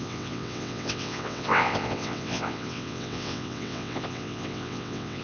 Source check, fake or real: fake